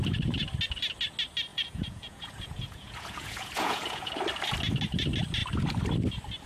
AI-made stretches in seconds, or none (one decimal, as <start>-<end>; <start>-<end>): 1.5-4.1